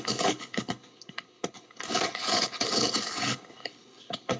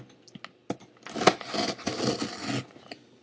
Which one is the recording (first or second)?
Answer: second